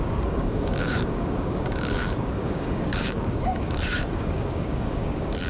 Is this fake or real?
fake